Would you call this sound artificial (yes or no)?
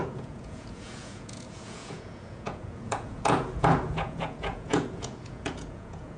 yes